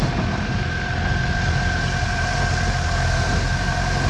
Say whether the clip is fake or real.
real